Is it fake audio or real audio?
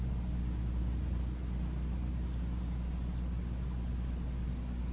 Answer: real